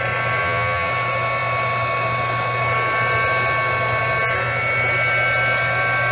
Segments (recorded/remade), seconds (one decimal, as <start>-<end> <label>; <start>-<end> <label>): 0.0-0.4 recorded; 0.4-0.9 remade; 0.9-6.1 recorded